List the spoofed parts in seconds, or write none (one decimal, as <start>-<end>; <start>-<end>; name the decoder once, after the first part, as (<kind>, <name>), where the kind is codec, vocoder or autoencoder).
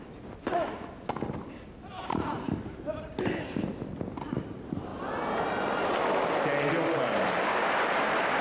none